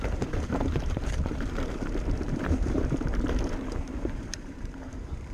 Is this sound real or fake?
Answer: fake